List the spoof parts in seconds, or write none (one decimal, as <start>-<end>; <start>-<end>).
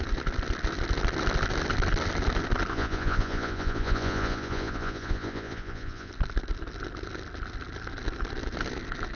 2.7-6.1